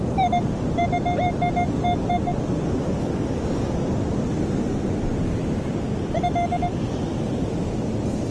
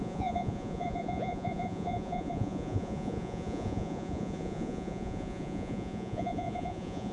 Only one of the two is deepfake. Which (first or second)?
second